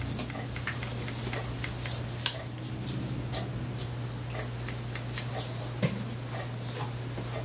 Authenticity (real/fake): real